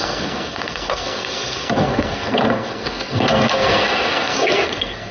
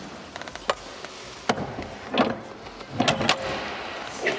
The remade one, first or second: first